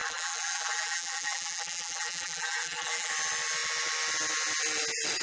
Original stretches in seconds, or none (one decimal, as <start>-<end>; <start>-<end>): 3.1-5.2